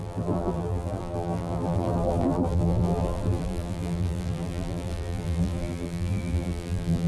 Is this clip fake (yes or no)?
yes